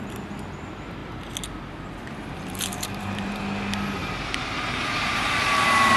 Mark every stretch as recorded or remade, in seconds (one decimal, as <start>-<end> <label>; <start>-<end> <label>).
0.0-2.7 recorded; 2.7-3.4 remade; 3.4-4.0 recorded; 4.0-5.3 remade; 5.3-6.0 recorded

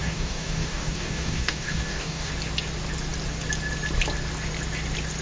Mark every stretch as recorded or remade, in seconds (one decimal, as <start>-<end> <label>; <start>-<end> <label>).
0.0-2.3 remade; 2.3-5.2 recorded